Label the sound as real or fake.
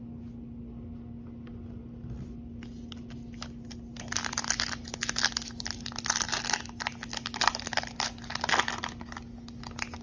real